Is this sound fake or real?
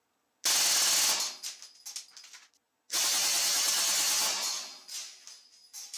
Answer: real